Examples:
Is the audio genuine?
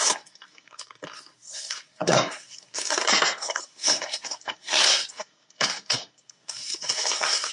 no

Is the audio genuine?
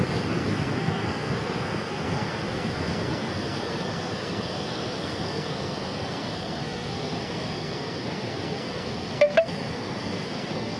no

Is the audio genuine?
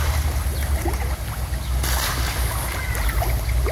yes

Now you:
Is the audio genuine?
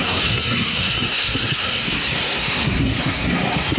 no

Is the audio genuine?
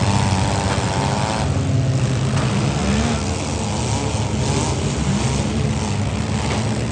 yes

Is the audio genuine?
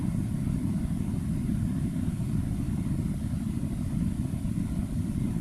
yes